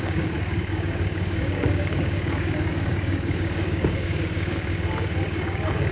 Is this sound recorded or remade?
remade